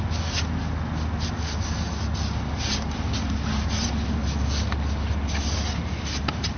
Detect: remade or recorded recorded